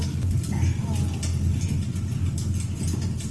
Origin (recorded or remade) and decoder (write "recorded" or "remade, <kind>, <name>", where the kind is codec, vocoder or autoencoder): recorded